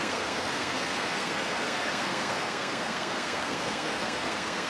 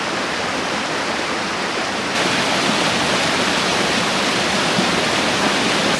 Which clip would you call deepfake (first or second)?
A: first